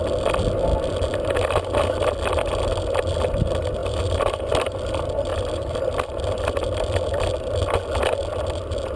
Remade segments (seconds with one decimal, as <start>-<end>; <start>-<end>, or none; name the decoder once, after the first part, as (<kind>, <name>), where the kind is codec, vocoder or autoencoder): 3.8-4.5 (vocoder, BigVGAN v2); 5.3-7.6

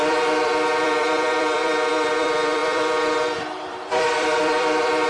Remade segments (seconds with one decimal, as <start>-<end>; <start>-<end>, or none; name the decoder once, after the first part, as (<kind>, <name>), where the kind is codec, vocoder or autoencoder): 0.0-5.1 (vocoder, BigVGAN v2)

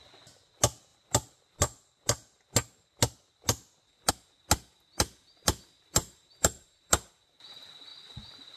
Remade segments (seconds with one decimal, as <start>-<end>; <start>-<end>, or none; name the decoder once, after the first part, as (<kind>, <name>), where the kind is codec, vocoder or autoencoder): 6.0-7.1 (vocoder, BigVGAN v2)

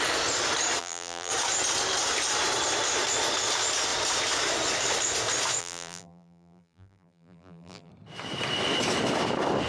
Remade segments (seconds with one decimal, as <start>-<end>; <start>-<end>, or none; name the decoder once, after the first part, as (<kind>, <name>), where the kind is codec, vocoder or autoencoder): 0.8-1.3 (vocoder, BigVGAN v2); 5.6-7.9

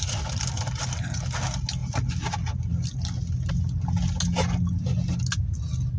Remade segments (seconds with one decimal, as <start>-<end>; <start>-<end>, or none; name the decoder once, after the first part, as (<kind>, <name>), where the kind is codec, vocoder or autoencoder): none

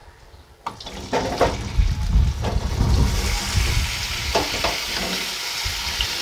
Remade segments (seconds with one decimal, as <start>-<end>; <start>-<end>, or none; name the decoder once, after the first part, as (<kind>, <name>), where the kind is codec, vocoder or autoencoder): none

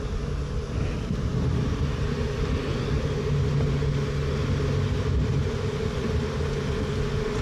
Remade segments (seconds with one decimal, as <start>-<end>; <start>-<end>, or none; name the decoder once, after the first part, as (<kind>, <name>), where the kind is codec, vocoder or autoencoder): none